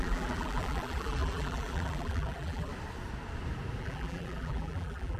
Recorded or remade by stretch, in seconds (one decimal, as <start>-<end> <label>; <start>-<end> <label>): 0.0-2.7 remade; 2.7-3.8 recorded; 3.8-5.2 remade